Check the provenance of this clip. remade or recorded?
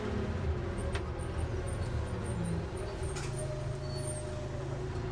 recorded